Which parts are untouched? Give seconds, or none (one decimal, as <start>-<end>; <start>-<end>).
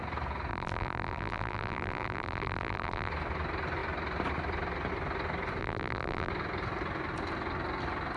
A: 0.0-0.5; 3.1-5.6; 6.3-8.2